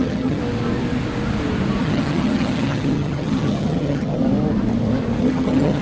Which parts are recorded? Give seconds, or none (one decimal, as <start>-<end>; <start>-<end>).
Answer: 0.4-1.8; 4.2-5.2